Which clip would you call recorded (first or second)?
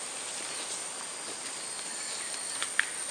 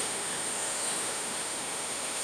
first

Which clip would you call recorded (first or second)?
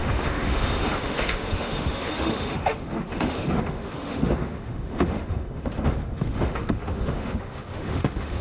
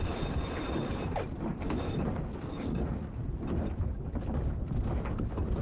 second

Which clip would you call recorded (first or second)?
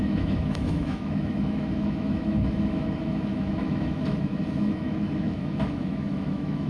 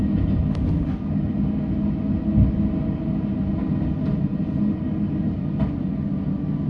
second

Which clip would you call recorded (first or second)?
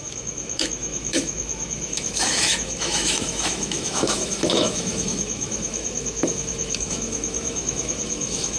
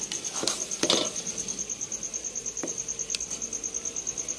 second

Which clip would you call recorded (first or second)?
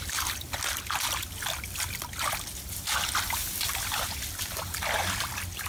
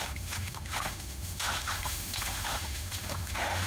first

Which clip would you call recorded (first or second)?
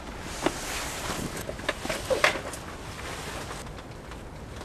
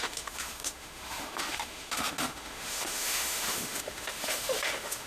first